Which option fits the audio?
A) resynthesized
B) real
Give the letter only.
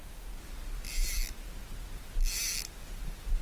B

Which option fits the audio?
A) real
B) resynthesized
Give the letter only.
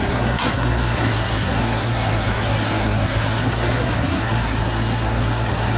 B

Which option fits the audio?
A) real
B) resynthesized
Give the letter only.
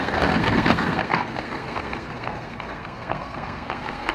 B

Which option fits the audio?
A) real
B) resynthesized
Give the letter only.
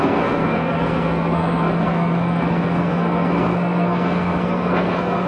B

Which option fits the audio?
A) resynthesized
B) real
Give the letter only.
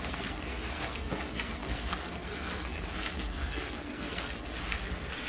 A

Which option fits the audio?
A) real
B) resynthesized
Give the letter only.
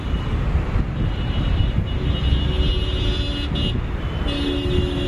A